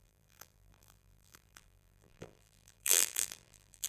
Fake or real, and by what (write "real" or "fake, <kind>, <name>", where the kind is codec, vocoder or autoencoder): fake, vocoder, BigVGAN v2